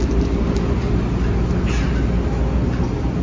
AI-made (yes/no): no